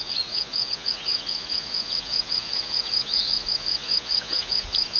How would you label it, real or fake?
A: fake